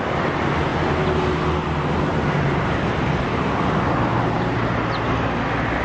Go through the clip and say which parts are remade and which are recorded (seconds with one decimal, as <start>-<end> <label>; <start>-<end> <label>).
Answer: 0.0-5.8 recorded